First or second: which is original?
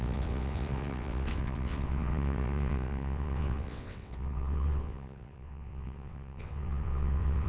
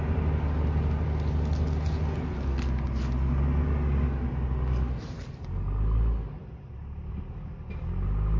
second